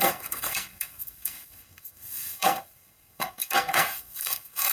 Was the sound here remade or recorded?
remade